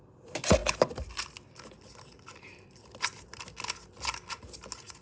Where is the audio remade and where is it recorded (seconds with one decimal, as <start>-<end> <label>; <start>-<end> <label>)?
0.0-5.0 recorded